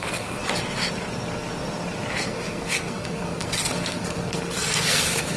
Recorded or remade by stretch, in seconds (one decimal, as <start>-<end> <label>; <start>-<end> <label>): 0.0-0.4 remade; 0.4-2.1 recorded; 2.1-5.4 remade